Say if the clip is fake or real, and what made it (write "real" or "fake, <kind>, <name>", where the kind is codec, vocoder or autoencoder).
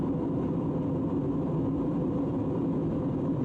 real